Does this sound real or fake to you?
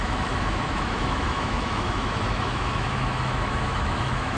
fake